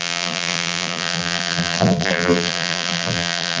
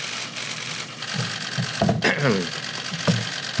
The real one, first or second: second